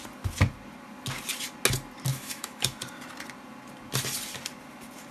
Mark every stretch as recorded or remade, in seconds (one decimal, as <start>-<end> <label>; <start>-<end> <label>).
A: 0.0-2.1 recorded; 2.1-2.8 remade; 2.8-5.1 recorded